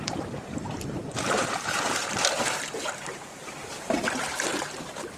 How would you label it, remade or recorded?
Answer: remade